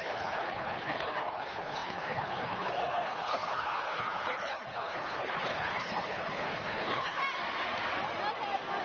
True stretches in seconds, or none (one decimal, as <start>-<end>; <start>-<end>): 7.2-8.8